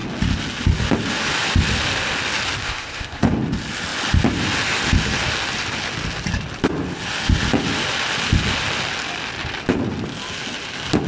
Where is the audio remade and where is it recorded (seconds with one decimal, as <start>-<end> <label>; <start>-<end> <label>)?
0.0-2.6 recorded; 2.6-3.3 remade; 3.3-11.1 recorded

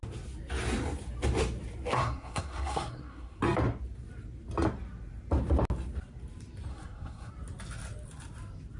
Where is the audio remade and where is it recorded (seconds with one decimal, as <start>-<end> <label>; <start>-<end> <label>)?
0.0-1.9 recorded; 1.9-3.4 remade; 3.4-6.7 recorded; 6.7-7.3 remade; 7.3-8.8 recorded

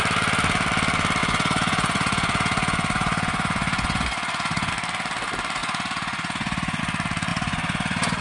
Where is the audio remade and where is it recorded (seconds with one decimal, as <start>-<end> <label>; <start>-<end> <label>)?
0.0-1.2 recorded; 1.2-4.7 remade; 4.7-5.6 recorded; 5.6-6.8 remade; 6.8-7.3 recorded; 7.3-8.2 remade

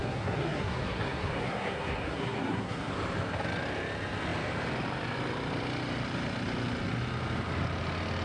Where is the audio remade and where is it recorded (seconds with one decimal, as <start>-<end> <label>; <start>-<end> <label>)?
0.0-2.9 remade; 2.9-8.2 recorded

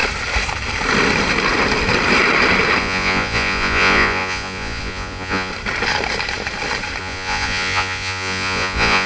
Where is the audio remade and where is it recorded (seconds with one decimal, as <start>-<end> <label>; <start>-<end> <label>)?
0.0-2.8 recorded; 2.8-5.5 remade; 5.5-7.0 recorded; 7.0-9.1 remade